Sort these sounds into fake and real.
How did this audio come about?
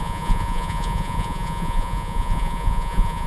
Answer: fake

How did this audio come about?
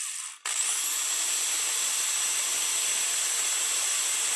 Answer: real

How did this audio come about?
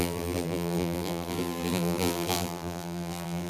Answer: fake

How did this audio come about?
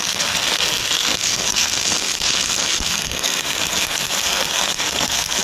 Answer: fake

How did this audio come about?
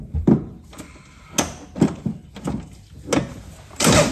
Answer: real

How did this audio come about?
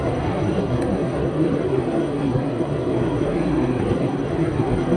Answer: fake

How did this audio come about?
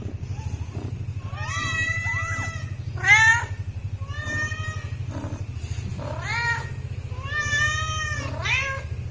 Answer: real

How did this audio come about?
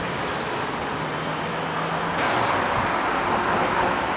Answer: real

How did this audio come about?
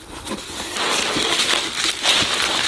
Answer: real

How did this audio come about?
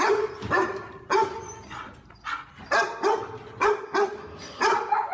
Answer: real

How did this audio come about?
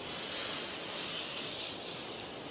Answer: real